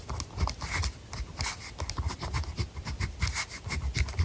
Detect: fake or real real